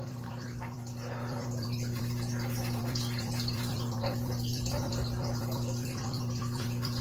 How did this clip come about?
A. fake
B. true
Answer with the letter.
A